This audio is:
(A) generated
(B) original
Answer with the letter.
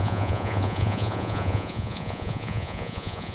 A